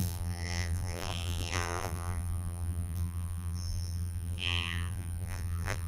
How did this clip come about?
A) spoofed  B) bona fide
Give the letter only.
A